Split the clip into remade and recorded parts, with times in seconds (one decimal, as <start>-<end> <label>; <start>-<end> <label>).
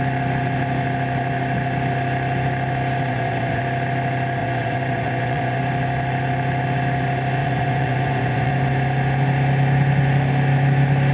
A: 0.0-3.1 recorded; 3.1-3.6 remade; 3.6-4.4 recorded; 4.4-5.6 remade; 5.6-7.4 recorded; 7.4-8.5 remade; 8.5-11.1 recorded